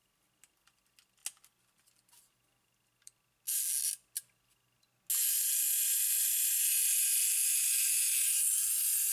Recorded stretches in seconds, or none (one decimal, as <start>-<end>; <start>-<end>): 0.0-9.1